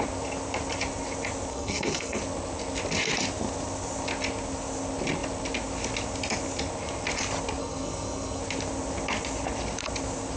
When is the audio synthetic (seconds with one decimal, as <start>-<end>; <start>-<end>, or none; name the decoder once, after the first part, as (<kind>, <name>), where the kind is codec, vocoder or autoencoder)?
1.5-2.2 (codec, SNAC); 7.6-8.4